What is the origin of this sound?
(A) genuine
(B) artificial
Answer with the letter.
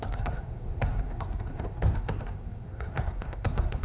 B